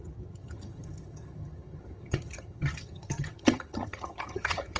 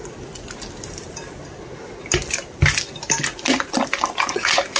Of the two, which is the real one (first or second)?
second